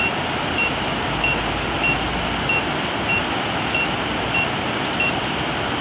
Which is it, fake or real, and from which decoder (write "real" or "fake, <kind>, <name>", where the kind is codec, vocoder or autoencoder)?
real